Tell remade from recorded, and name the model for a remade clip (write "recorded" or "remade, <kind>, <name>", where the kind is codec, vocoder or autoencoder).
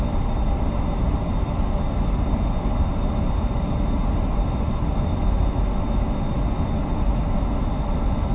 recorded